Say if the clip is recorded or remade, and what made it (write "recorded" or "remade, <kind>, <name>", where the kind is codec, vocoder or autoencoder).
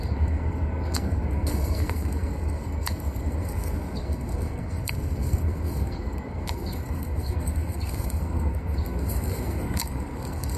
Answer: remade, codec, SNAC